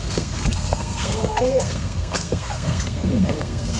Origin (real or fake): fake